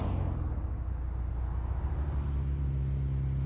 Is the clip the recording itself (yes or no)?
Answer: yes